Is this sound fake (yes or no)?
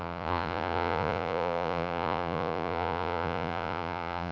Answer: yes